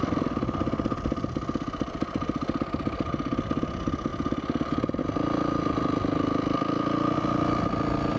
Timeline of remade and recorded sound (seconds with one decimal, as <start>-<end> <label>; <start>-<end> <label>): 0.0-8.2 recorded